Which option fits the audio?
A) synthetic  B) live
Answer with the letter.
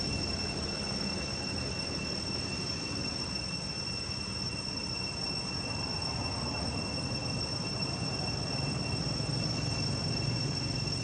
B